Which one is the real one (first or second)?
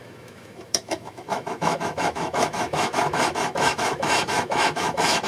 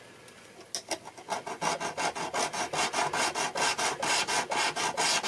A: second